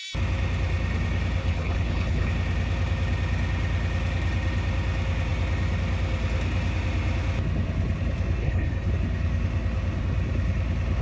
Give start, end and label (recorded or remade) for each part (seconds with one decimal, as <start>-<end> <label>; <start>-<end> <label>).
0.0-1.4 recorded; 1.4-2.3 remade; 2.3-8.4 recorded; 8.4-8.9 remade; 8.9-11.0 recorded